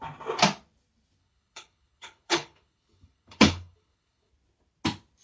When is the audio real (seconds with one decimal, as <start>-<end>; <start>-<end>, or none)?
0.0-1.2; 4.3-5.2